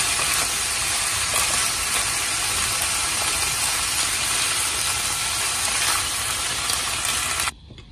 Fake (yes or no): no